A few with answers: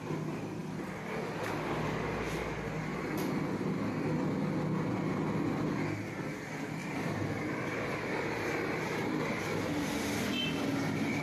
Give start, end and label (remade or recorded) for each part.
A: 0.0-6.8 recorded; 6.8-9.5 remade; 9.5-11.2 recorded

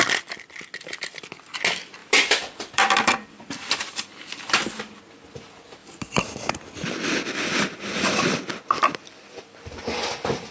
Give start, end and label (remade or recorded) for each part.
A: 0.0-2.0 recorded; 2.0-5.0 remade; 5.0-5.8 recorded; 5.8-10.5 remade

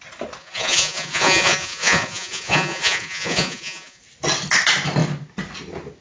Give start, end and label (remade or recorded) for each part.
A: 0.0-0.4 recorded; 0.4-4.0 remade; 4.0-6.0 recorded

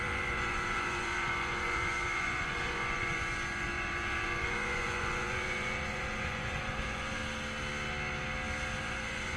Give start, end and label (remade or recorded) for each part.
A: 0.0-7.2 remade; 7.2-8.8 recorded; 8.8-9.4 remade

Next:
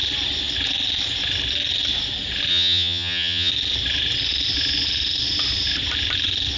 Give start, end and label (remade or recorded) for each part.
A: 0.0-2.5 recorded; 2.5-3.5 remade; 3.5-6.6 recorded

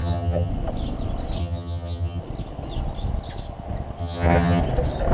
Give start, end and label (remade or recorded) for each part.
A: 0.0-0.5 remade; 0.5-1.4 recorded; 1.4-2.2 remade; 2.2-4.0 recorded; 4.0-4.6 remade; 4.6-5.1 recorded